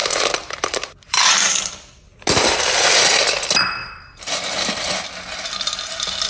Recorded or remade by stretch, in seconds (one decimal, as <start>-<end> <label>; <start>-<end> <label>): 0.0-1.7 remade; 1.7-3.8 recorded; 3.8-4.3 remade; 4.3-6.3 recorded